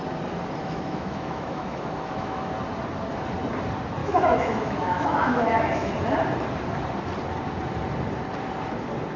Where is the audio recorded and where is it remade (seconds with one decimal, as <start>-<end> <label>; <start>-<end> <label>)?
0.0-0.6 recorded; 0.6-2.5 remade; 2.5-4.0 recorded; 4.0-5.9 remade; 5.9-9.2 recorded